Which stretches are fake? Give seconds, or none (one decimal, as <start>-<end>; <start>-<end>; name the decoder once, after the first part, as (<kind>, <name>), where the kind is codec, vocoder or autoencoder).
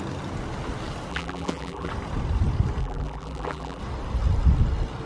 1.1-1.9 (vocoder, BigVGAN v2); 2.8-3.8